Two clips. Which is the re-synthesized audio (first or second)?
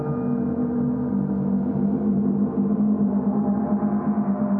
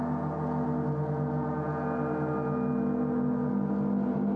first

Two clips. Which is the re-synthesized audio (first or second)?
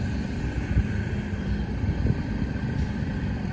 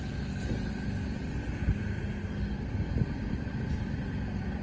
first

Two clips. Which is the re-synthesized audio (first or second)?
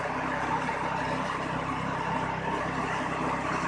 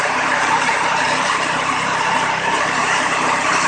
second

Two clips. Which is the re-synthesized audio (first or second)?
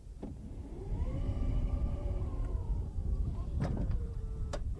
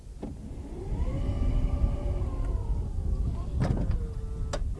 first